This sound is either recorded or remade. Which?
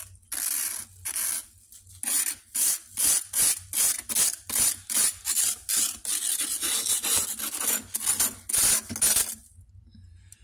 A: recorded